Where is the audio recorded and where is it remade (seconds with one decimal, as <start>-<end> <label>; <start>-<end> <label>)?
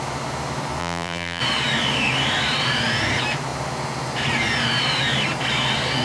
0.0-0.8 recorded; 0.8-1.4 remade; 1.4-6.0 recorded